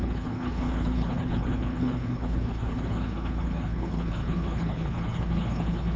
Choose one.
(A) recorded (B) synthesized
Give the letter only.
B